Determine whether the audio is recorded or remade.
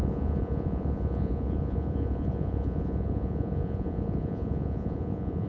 remade